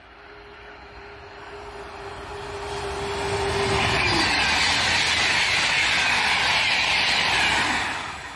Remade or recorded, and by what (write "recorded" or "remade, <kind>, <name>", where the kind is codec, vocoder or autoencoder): recorded